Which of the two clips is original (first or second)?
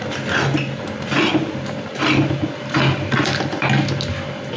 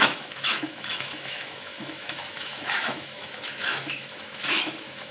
first